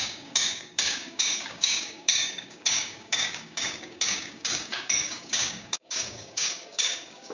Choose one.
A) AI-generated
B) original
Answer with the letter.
A